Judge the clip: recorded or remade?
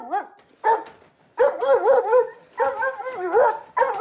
recorded